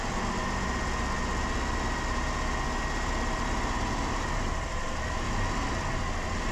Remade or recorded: recorded